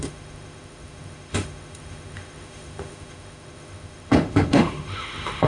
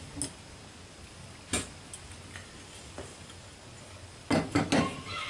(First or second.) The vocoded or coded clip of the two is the first